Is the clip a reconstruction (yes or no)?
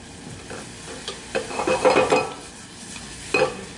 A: no